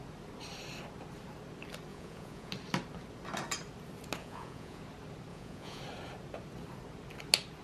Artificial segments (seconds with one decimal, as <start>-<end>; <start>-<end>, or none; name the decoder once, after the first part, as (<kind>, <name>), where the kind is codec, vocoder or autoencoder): 1.9-2.5 (vocoder, Vocos); 4.2-4.8; 5.3-5.8